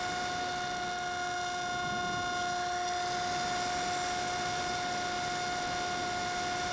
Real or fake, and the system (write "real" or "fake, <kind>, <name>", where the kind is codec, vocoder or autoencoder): real